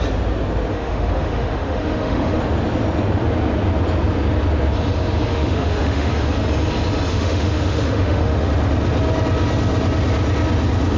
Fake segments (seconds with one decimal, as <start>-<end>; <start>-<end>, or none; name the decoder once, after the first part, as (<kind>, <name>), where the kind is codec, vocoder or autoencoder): 0.7-2.4 (autoencoder, DAC-VAE); 5.3-6.1; 7.1-8.5